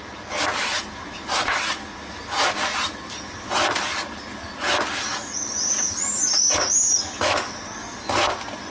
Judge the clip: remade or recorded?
recorded